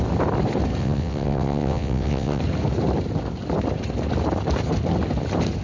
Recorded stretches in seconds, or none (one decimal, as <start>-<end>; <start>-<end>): 0.0-0.8; 2.4-5.6